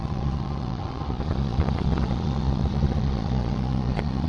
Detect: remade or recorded remade